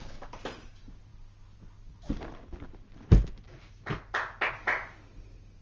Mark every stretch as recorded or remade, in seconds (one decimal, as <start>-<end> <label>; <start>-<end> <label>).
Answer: 0.0-5.6 recorded